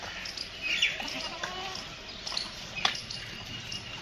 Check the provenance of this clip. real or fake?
real